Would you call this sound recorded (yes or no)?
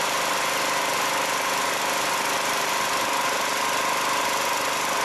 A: yes